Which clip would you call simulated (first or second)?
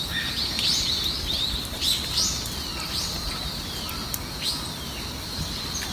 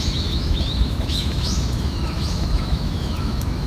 second